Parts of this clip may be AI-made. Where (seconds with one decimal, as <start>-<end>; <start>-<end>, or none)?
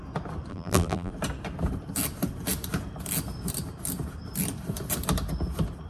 0.5-1.1